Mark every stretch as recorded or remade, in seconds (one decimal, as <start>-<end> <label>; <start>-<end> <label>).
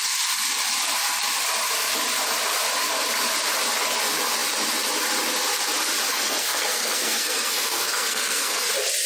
0.0-6.1 recorded; 6.1-8.7 remade; 8.7-9.1 recorded